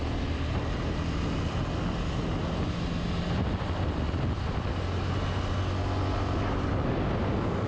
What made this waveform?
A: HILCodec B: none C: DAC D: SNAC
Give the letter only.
B